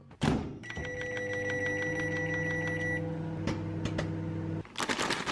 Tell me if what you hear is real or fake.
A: real